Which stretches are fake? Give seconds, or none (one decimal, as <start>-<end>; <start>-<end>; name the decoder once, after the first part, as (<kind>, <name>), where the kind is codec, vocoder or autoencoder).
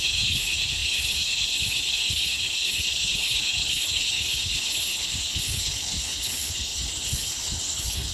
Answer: 0.0-8.1 (codec, HILCodec)